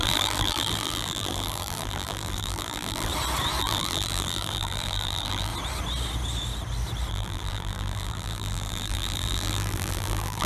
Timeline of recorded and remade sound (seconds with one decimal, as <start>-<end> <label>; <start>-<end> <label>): 0.0-3.1 remade; 3.1-3.6 recorded; 3.6-5.5 remade; 5.5-7.1 recorded; 7.1-10.5 remade